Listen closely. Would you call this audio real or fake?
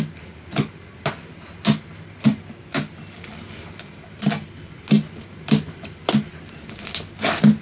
real